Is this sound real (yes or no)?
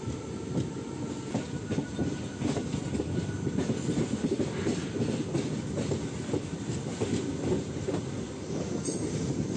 yes